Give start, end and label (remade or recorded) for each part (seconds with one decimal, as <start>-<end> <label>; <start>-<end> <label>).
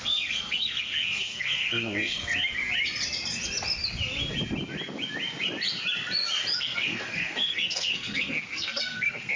0.0-2.2 remade; 2.2-6.6 recorded; 6.6-9.4 remade